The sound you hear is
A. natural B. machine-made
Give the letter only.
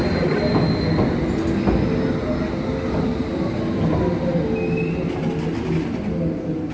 A